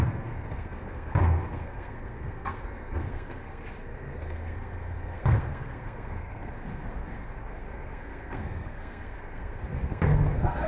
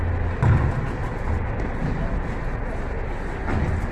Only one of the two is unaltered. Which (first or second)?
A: second